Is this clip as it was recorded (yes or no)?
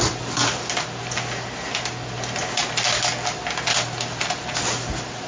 yes